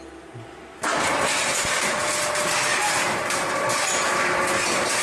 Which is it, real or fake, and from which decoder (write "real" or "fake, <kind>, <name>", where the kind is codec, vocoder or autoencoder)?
real